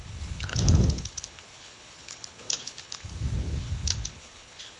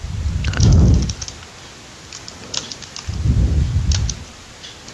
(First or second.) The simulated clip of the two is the first